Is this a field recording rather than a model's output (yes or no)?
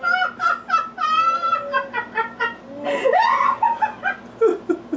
yes